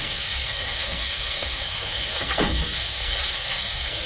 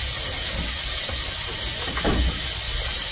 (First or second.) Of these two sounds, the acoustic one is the second